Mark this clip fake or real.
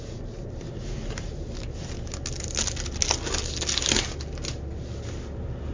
real